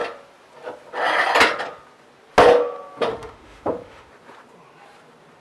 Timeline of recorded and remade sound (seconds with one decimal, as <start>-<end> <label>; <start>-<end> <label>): 0.0-3.1 recorded; 3.1-4.1 remade; 4.1-5.4 recorded